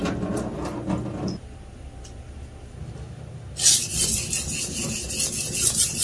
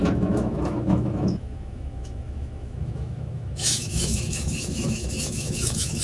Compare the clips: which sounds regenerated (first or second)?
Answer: second